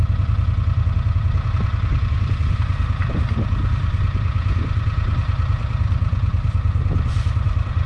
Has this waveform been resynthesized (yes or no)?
yes